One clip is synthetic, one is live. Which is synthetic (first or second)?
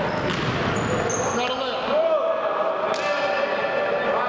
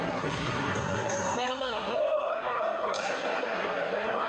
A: second